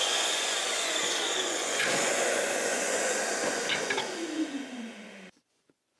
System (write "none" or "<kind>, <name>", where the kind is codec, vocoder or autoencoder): vocoder, Vocos